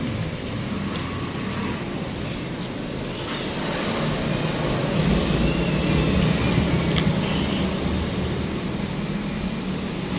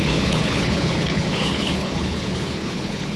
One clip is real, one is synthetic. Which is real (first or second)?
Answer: first